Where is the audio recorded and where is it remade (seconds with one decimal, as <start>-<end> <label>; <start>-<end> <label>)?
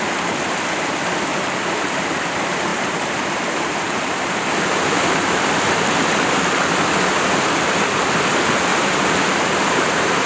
0.0-1.3 recorded; 1.3-2.1 remade; 2.1-2.7 recorded; 2.7-4.5 remade; 4.5-8.7 recorded; 8.7-10.3 remade